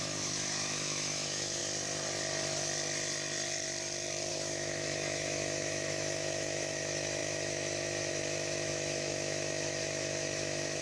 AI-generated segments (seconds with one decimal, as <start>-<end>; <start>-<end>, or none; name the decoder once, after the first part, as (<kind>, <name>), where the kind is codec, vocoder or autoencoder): 0.0-1.6 (autoencoder, DAC-VAE); 4.3-10.8